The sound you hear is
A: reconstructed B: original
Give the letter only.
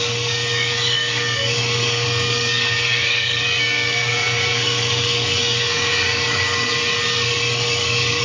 A